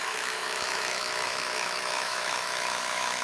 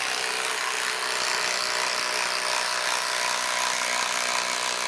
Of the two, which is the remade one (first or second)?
first